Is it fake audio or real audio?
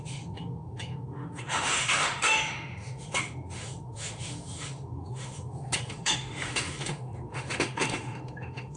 fake